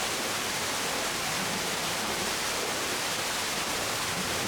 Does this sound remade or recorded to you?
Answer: remade